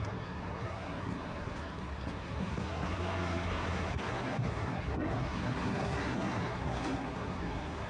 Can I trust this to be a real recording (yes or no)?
no